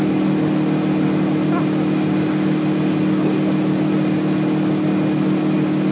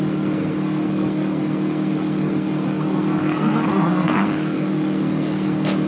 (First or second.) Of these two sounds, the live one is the first